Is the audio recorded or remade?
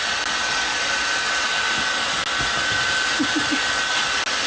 recorded